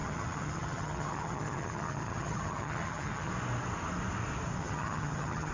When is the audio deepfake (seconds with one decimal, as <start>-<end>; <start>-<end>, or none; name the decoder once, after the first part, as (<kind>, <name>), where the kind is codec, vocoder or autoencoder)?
0.0-3.3 (vocoder, HiFi-GAN); 4.6-5.5